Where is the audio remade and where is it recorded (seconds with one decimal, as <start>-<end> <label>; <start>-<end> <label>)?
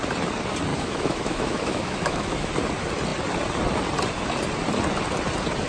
0.0-0.7 recorded; 0.7-2.5 remade; 2.5-5.7 recorded